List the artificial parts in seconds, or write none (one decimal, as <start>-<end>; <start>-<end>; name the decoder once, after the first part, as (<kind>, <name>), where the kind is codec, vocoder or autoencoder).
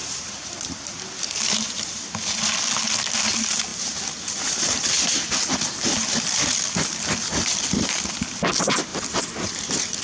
0.0-0.9 (vocoder, BigVGAN v2); 8.9-10.0